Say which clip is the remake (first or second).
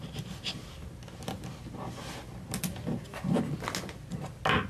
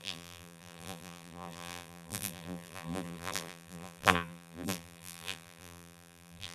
second